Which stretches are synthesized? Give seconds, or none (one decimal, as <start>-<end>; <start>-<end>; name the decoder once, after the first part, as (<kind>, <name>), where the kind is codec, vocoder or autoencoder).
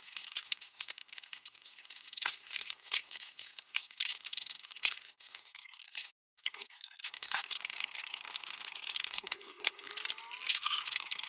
0.0-9.9 (codec, SNAC); 10.5-11.3